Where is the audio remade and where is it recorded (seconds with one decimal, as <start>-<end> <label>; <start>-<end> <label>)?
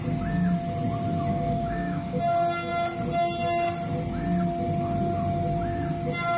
0.0-1.3 recorded; 1.3-2.2 remade; 2.2-6.4 recorded